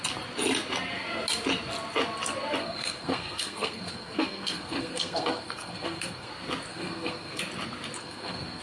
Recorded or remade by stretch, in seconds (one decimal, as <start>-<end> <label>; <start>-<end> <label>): 0.0-2.6 recorded; 2.6-6.3 remade; 6.3-6.7 recorded; 6.7-7.4 remade; 7.4-8.0 recorded; 8.0-8.6 remade